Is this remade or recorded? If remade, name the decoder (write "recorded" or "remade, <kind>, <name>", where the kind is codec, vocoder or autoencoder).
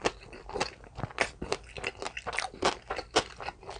recorded